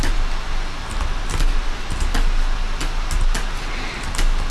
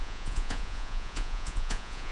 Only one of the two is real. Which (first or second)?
first